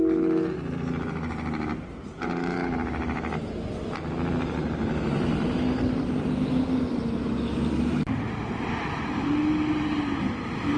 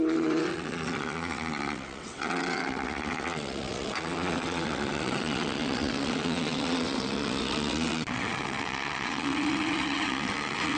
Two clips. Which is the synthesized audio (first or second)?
second